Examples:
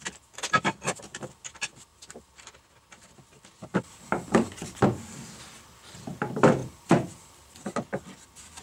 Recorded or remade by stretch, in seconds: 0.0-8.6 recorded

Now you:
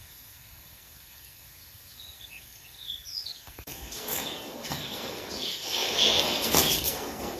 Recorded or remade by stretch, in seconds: 0.0-7.4 remade

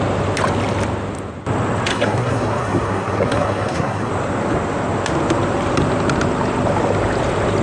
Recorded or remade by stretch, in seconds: 0.0-1.9 recorded; 1.9-4.1 remade; 4.1-7.6 recorded

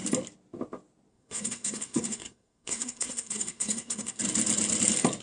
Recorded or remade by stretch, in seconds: 0.0-1.1 recorded; 1.1-4.2 remade; 4.2-5.2 recorded

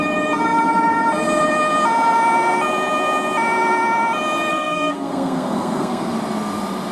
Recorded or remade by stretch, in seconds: 0.0-4.5 recorded; 4.5-6.1 remade; 6.1-6.9 recorded

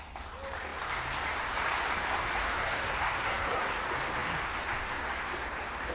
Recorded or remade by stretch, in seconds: 0.0-2.6 recorded; 2.6-3.7 remade; 3.7-5.9 recorded

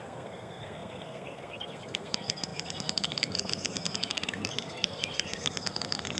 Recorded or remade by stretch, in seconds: 0.0-6.2 remade

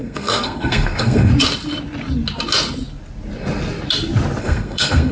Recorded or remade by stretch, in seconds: 0.0-1.3 remade; 1.3-4.4 recorded; 4.4-5.1 remade